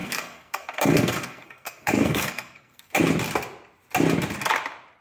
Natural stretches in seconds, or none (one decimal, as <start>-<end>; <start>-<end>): 3.0-5.0